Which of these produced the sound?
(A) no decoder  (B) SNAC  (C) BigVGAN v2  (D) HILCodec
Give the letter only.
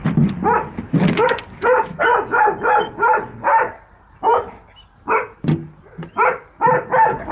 A